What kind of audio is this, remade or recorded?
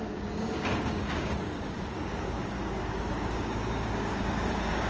remade